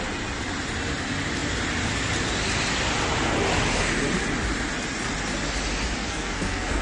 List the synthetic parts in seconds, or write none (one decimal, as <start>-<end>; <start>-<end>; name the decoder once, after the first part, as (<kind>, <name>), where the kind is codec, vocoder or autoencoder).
6.0-6.8 (codec, SNAC)